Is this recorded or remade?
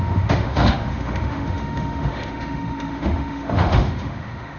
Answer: remade